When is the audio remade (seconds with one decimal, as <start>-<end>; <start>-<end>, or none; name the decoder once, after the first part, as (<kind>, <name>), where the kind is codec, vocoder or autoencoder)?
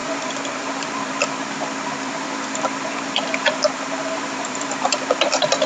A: 0.0-5.7 (vocoder, BigVGAN v2)